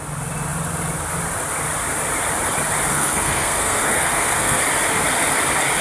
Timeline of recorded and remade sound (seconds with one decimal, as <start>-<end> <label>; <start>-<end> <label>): 0.0-2.9 recorded; 2.9-4.6 remade; 4.6-5.8 recorded